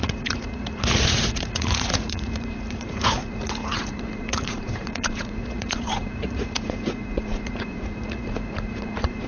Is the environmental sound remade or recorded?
remade